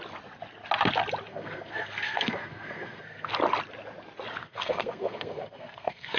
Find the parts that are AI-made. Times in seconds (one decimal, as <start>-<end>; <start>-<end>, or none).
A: 1.3-3.3; 4.4-6.2